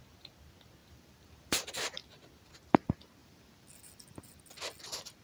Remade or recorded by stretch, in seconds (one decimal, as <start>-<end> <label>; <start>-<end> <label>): 0.0-0.8 recorded; 0.8-2.3 remade; 2.3-3.2 recorded; 3.2-4.4 remade; 4.4-5.2 recorded